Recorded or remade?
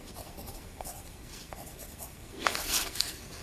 remade